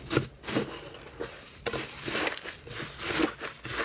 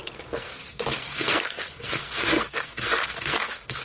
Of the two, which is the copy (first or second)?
second